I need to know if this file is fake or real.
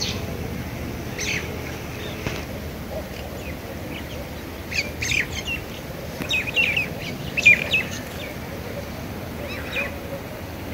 real